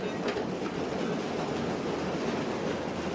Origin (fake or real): real